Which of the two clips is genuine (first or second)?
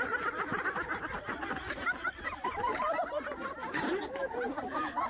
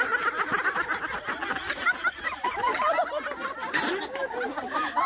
second